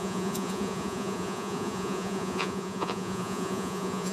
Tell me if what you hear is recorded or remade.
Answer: remade